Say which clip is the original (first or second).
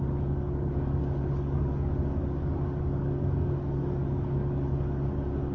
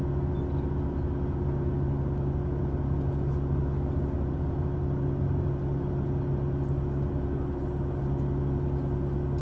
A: second